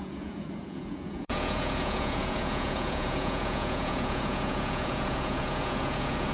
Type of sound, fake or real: fake